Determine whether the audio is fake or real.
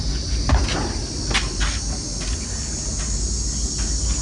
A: real